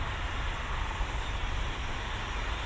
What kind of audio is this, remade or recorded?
recorded